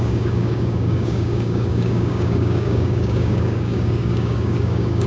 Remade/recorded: remade